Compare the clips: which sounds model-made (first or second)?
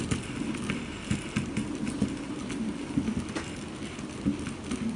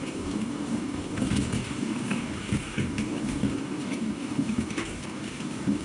second